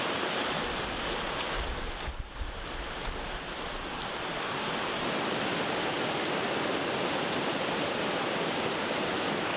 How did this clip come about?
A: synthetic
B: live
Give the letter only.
B